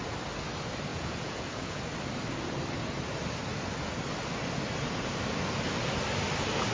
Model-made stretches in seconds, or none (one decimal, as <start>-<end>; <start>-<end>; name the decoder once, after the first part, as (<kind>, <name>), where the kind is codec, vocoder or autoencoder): 0.9-1.8 (vocoder, Vocos)